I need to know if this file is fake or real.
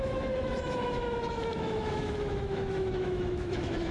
fake